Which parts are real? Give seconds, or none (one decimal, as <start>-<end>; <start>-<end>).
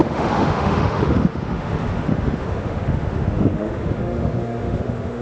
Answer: none